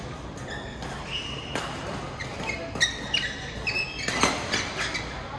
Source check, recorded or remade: recorded